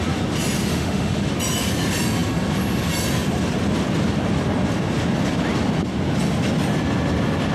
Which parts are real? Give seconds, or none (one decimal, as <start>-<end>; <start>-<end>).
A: 0.0-0.7; 1.3-7.5